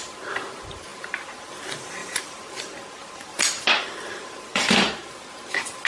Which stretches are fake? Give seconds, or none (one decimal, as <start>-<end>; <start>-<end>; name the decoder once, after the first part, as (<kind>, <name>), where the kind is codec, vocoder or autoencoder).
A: 2.0-5.1 (vocoder, BigVGAN v2)